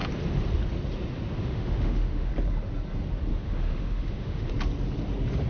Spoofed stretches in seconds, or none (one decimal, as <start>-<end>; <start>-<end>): 1.4-2.3; 3.3-4.5